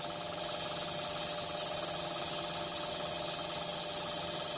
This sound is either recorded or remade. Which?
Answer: recorded